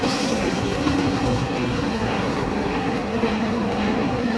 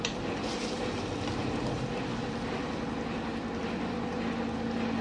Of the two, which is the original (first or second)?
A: second